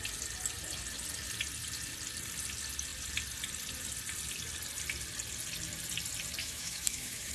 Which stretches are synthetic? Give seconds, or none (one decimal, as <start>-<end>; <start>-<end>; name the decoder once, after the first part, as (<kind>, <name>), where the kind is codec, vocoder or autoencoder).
6.4-7.3 (autoencoder, DAC-VAE)